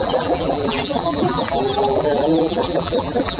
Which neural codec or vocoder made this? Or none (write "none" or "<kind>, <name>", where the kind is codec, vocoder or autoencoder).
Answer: vocoder, BigVGAN v2